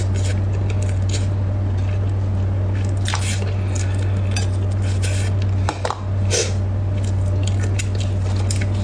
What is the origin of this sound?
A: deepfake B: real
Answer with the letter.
B